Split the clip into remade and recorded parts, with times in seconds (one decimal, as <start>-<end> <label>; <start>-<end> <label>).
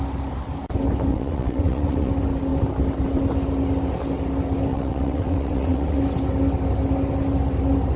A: 0.0-1.1 recorded; 1.1-2.1 remade; 2.1-4.7 recorded; 4.7-6.0 remade; 6.0-8.0 recorded